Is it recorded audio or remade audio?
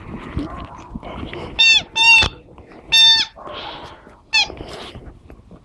recorded